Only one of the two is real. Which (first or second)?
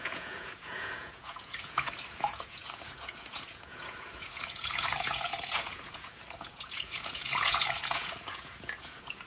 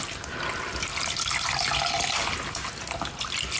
second